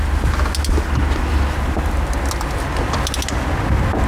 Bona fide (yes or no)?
yes